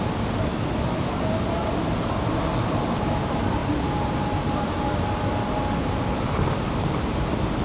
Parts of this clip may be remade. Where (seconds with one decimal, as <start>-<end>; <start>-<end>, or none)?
0.5-1.2

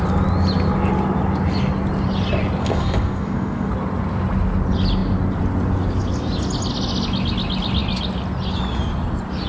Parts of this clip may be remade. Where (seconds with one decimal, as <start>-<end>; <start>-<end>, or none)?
2.6-3.7